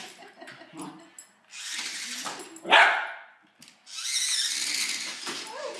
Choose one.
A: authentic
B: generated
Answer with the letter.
A